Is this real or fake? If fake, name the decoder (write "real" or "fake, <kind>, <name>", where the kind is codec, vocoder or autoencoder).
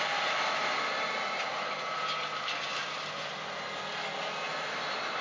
real